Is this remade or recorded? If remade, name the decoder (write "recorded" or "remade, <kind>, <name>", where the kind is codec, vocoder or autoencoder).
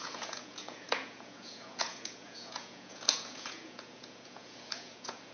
remade, vocoder, Vocos